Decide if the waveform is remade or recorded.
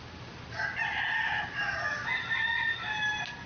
recorded